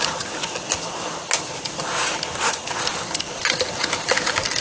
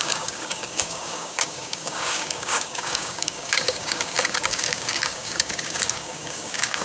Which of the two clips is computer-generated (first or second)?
second